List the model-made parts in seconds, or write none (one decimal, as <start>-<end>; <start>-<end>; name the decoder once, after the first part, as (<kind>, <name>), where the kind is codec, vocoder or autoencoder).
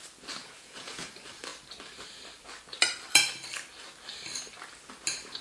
0.4-1.1 (vocoder, Vocos)